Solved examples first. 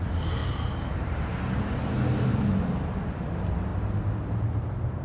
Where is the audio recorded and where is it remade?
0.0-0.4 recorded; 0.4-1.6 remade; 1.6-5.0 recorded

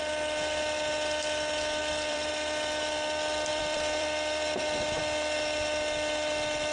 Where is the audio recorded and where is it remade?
0.0-1.8 recorded; 1.8-2.3 remade; 2.3-3.5 recorded; 3.5-5.0 remade; 5.0-6.7 recorded

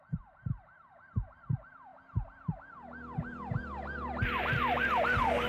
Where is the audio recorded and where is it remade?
0.0-1.9 remade; 1.9-4.4 recorded; 4.4-5.5 remade

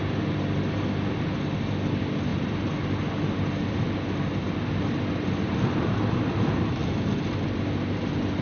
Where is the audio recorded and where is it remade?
0.0-3.6 recorded; 3.6-4.3 remade; 4.3-8.4 recorded

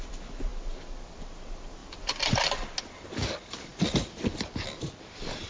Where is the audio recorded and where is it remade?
0.0-1.8 recorded; 1.8-2.6 remade; 2.6-3.7 recorded; 3.7-4.2 remade; 4.2-5.5 recorded

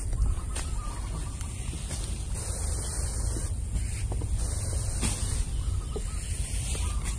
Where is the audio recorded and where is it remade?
0.0-7.2 recorded